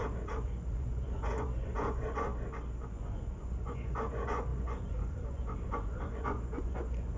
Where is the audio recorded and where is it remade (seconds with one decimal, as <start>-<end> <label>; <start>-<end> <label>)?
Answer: 0.0-2.3 remade; 2.3-2.9 recorded; 2.9-7.2 remade